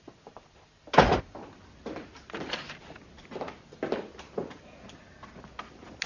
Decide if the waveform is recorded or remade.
recorded